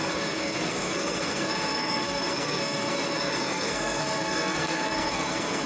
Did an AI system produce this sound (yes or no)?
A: yes